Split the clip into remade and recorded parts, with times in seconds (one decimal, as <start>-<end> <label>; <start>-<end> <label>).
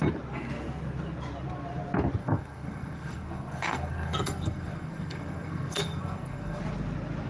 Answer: 0.0-2.2 recorded; 2.2-6.6 remade; 6.6-7.3 recorded